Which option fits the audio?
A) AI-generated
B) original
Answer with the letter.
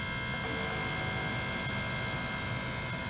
B